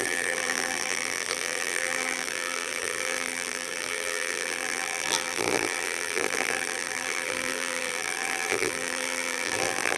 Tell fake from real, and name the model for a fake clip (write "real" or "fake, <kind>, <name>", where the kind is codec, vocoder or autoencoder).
fake, vocoder, BigVGAN v2